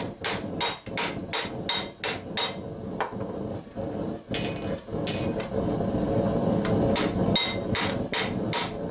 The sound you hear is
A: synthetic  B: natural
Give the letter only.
B